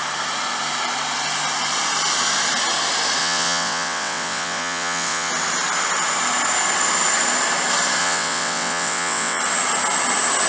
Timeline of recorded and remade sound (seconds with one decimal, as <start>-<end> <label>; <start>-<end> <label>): 0.0-3.2 recorded; 3.2-5.3 remade; 5.3-8.0 recorded; 8.0-9.4 remade; 9.4-10.5 recorded